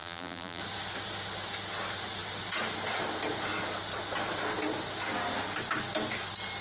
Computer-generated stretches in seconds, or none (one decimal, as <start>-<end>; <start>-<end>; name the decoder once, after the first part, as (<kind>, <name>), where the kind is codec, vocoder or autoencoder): 0.0-0.6 (vocoder, BigVGAN v2)